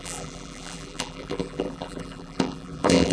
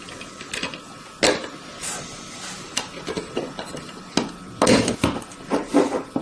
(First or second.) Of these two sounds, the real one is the second